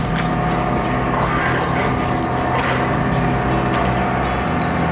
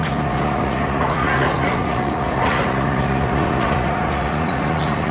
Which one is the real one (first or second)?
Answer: first